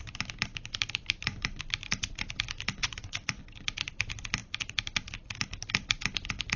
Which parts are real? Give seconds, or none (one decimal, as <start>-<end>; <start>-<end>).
0.0-2.8; 3.4-6.6